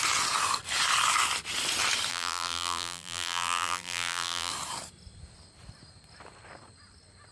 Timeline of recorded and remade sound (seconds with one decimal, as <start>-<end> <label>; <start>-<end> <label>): 0.0-2.1 recorded; 2.1-4.5 remade; 4.5-7.3 recorded